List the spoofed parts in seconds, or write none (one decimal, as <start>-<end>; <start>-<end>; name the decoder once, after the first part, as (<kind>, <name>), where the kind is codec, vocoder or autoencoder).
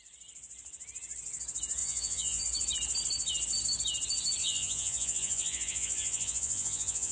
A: 1.8-2.4 (vocoder, Vocos); 4.4-7.1